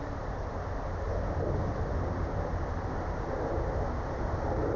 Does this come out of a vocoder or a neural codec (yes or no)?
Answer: yes